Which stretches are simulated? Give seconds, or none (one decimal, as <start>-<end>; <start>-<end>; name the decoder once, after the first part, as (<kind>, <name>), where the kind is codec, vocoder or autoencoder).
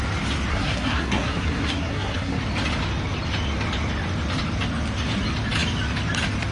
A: 0.5-2.4 (codec, SNAC)